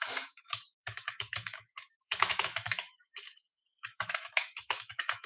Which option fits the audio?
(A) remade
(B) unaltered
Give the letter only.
A